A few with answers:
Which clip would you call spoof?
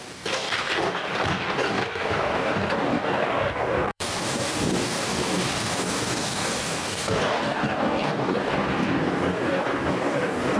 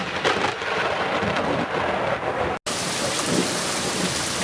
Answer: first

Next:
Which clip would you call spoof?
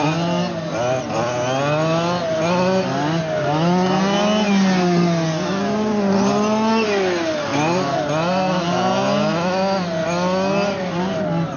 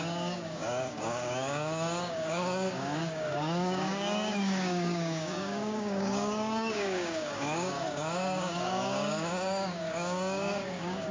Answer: second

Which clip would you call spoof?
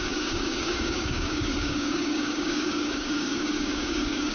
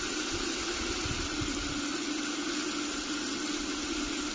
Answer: first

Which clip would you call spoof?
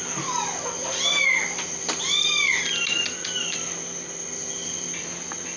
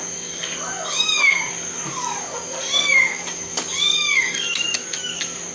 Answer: second